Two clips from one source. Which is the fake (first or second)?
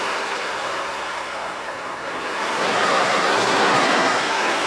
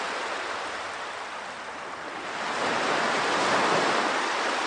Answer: first